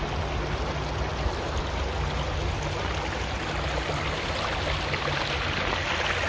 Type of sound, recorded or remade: recorded